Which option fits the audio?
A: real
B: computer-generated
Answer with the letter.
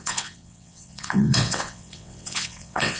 B